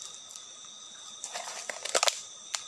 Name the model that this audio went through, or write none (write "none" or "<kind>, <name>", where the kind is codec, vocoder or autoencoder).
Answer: none